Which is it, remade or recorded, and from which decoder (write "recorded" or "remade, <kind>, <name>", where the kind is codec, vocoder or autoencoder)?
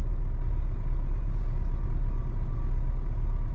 recorded